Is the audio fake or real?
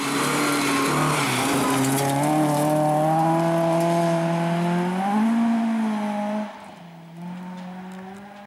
real